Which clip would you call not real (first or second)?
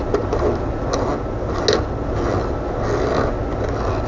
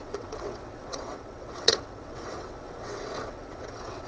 second